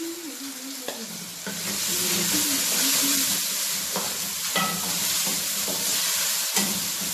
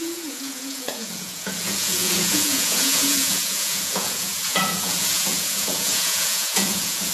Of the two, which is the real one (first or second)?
first